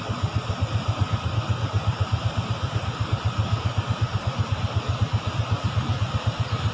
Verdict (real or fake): real